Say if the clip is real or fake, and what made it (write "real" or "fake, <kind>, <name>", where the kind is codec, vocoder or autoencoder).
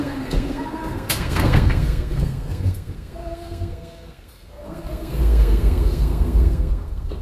fake, codec, SNAC